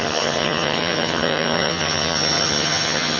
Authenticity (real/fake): fake